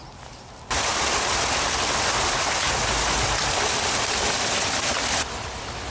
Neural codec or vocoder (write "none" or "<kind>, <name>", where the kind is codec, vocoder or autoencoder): none